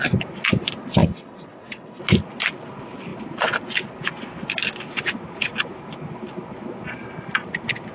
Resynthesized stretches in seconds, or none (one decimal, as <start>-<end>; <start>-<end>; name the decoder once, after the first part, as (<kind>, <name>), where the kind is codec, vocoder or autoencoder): 1.0-2.0 (vocoder, WaveNeXt)